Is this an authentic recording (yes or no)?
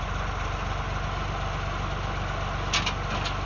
yes